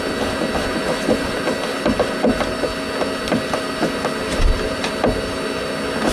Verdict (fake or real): real